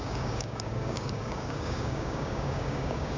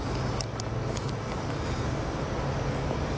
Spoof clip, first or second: first